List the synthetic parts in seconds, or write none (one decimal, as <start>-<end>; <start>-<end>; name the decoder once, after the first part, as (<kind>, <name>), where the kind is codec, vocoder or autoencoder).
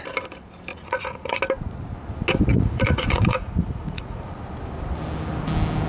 0.7-1.4 (vocoder, Vocos); 2.5-4.3